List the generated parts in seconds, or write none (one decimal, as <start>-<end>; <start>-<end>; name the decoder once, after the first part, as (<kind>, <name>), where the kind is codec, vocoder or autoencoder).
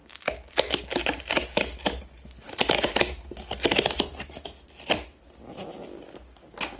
none